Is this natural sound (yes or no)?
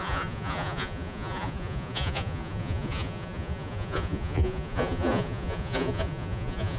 no